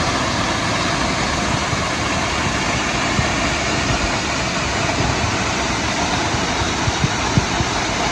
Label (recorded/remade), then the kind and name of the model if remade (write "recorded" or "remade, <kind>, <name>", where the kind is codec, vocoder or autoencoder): recorded